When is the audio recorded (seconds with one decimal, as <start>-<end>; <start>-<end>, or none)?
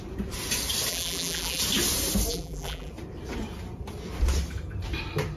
0.0-0.9; 1.6-2.3; 2.9-5.4